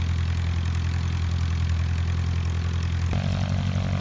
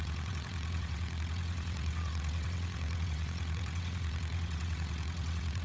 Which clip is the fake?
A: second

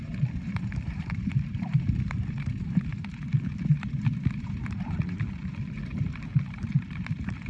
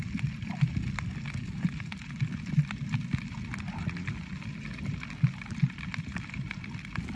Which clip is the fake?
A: first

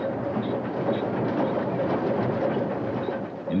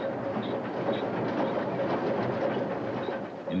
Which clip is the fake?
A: first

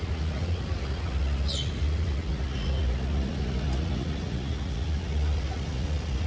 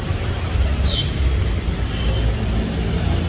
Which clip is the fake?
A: first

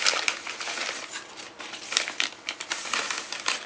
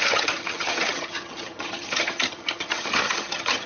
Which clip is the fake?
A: second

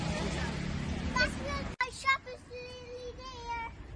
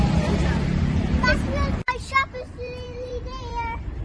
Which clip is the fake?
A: second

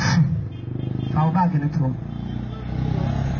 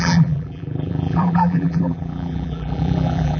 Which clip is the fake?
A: second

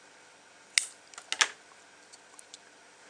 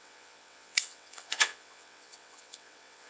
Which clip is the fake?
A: second